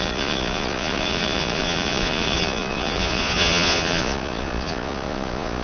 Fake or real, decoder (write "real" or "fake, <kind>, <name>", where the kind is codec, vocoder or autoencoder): fake, vocoder, Vocos